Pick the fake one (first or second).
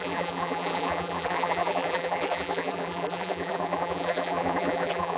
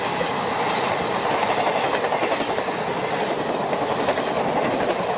first